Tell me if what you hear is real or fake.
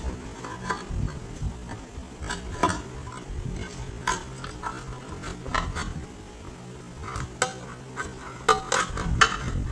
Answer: real